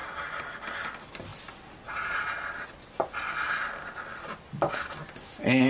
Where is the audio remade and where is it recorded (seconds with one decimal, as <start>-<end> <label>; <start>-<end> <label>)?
0.0-0.9 remade; 0.9-5.7 recorded